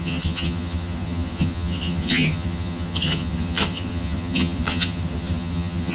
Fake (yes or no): yes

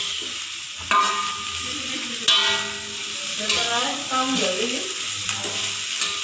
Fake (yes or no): no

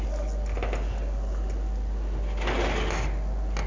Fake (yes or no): no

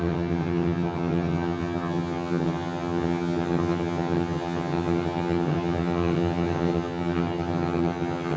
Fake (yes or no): yes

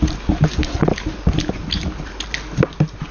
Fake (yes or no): no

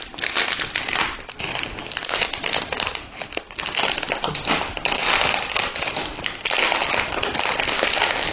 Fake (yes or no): no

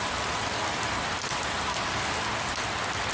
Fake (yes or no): no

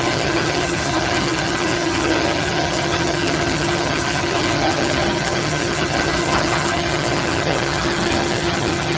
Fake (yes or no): yes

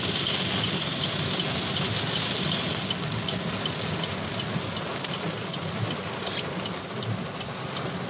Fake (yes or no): no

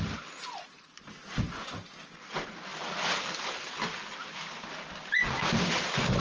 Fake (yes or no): no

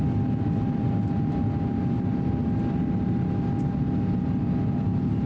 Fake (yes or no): no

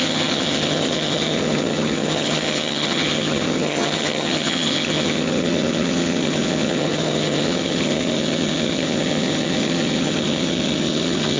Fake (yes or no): yes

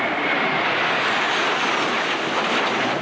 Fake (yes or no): no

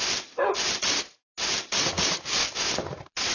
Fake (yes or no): no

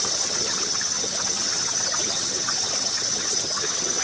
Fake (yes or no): yes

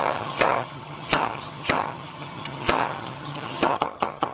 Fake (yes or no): yes